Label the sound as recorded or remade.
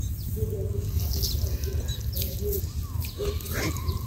recorded